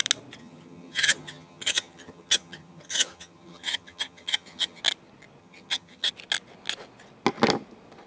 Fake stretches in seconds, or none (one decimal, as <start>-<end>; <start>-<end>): 0.4-4.8; 5.4-6.1